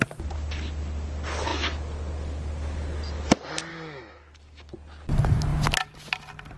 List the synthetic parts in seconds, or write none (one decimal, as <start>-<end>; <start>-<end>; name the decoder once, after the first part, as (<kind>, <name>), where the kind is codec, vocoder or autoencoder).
3.7-4.7 (autoencoder, DAC-VAE)